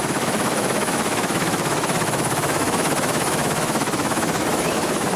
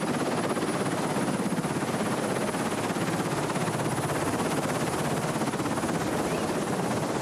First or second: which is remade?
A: first